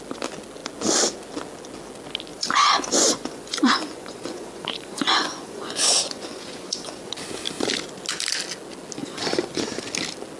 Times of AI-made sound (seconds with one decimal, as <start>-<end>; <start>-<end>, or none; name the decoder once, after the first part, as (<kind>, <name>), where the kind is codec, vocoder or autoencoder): 2.3-7.1 (vocoder, Vocos); 9.0-9.7